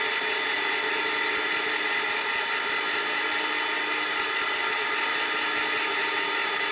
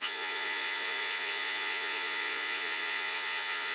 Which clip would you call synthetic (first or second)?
second